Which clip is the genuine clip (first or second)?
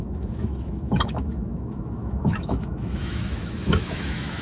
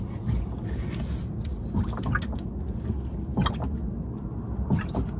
second